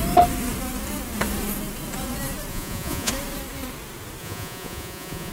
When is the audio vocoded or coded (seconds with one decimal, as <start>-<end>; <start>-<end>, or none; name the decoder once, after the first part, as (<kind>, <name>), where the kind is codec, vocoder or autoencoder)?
2.5-3.1 (vocoder, Vocos); 4.2-5.3